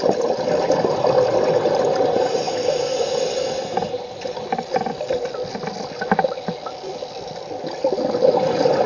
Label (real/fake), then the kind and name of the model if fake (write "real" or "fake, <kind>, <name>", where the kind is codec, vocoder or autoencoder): real